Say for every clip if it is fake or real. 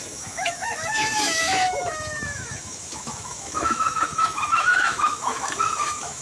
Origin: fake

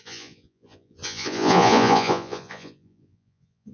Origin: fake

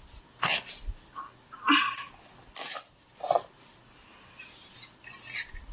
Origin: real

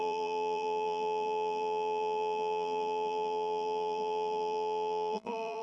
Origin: fake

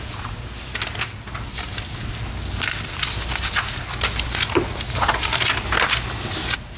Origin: real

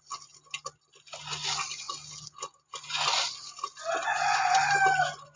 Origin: real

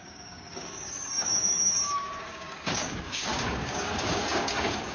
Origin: fake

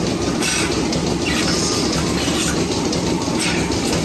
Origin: fake